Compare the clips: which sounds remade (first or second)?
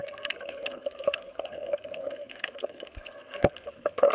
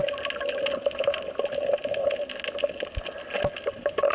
first